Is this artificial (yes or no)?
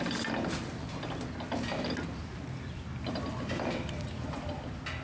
no